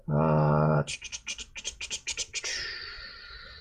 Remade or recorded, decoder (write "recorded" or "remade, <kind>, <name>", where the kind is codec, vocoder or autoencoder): recorded